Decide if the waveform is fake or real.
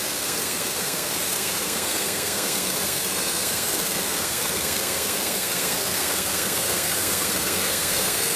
fake